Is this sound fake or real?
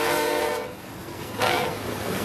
fake